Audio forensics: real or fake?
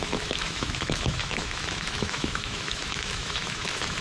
fake